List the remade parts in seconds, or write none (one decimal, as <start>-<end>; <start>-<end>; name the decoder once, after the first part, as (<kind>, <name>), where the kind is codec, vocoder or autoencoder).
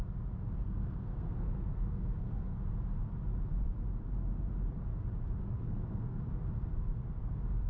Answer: 0.6-2.6 (codec, SNAC); 5.4-6.2